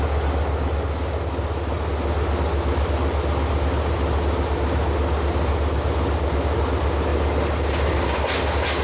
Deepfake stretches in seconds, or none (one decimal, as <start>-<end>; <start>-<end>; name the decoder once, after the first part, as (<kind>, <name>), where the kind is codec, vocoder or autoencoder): none